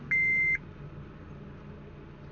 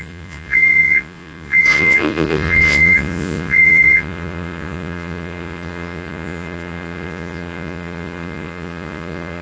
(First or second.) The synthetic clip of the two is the second